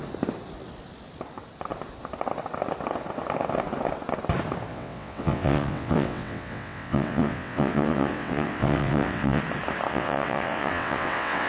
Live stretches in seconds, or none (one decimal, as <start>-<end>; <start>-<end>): 0.0-4.7; 9.4-9.9